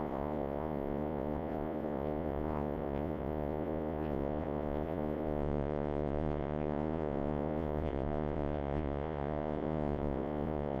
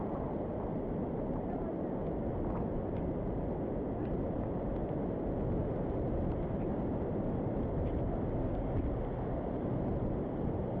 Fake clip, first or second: first